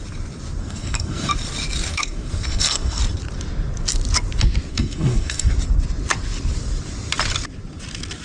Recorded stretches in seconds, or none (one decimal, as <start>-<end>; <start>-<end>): 0.0-0.6; 1.3-1.9; 3.0-4.7; 5.5-8.2